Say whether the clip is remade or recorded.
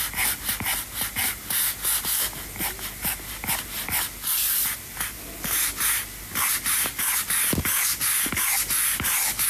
recorded